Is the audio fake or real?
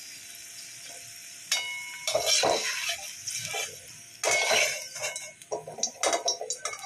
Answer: real